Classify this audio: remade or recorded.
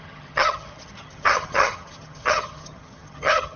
remade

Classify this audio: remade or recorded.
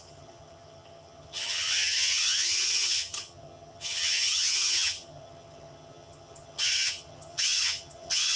remade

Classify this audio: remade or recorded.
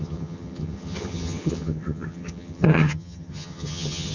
remade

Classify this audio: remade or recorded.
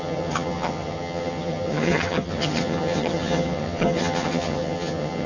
remade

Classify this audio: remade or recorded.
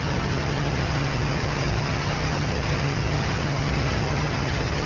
remade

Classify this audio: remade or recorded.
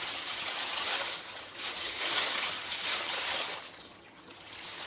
remade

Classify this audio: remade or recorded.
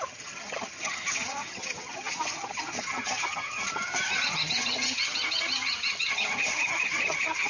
remade